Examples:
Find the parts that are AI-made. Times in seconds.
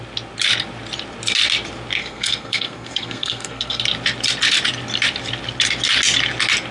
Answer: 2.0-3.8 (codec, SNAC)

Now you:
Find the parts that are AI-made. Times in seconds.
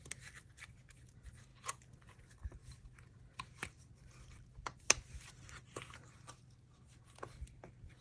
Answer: none